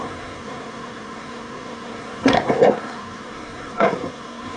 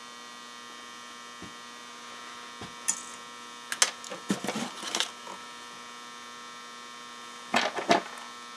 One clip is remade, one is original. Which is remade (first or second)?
first